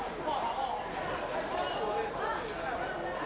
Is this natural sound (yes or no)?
yes